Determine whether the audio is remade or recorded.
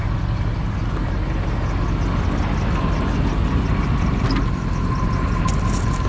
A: recorded